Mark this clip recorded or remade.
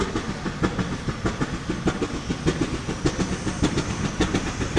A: recorded